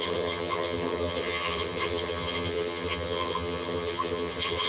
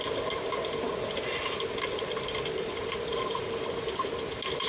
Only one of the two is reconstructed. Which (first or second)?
first